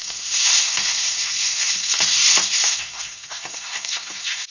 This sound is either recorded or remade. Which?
remade